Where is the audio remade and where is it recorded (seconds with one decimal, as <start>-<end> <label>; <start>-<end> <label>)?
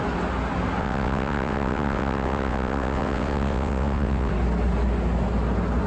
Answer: 0.0-0.8 recorded; 0.8-4.3 remade; 4.3-5.9 recorded